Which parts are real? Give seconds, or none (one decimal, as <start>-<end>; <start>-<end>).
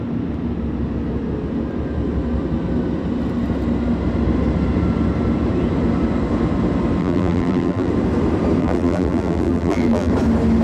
0.0-7.0; 7.9-8.6; 10.1-10.6